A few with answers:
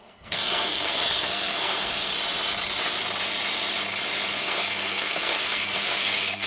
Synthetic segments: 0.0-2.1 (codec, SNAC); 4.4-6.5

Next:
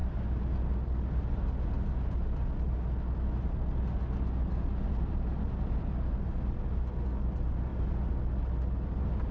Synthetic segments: none